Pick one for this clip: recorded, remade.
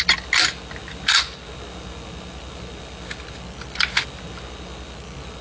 recorded